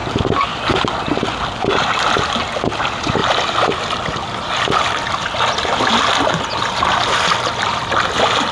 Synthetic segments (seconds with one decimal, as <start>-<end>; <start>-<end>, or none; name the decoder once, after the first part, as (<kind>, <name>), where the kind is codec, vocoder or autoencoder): none